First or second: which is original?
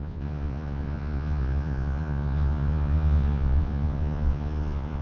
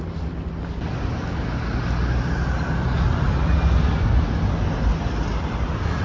second